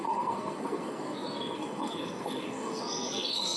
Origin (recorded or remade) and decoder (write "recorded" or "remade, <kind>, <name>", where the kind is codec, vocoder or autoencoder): remade, codec, SNAC